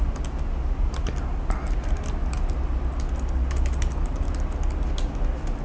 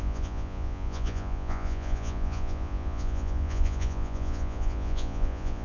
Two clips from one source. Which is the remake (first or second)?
second